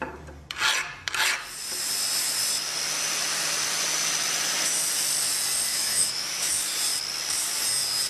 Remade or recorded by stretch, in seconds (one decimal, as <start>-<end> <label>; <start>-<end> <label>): 0.0-5.7 recorded; 5.7-6.5 remade; 6.5-8.1 recorded